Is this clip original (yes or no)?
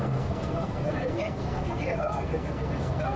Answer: no